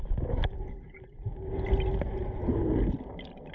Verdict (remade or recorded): recorded